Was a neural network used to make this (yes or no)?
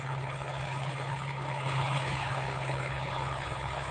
yes